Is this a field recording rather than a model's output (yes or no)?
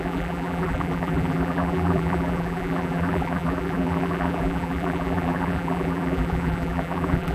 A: no